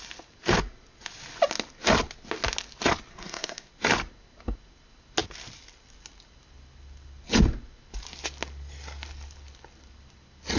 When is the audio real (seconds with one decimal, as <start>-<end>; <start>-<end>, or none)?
0.0-3.1; 3.7-10.6